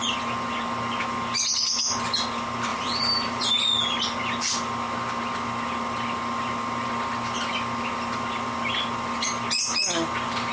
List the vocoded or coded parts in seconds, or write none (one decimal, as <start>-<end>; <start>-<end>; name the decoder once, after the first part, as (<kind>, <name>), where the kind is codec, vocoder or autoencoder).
2.7-3.6 (vocoder, BigVGAN v2)